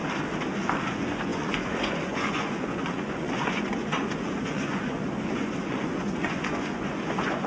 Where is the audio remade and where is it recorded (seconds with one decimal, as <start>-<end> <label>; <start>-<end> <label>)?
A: 0.0-0.9 recorded; 0.9-7.5 remade